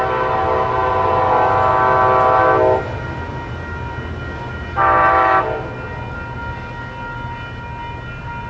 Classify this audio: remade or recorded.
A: recorded